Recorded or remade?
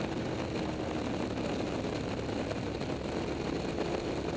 recorded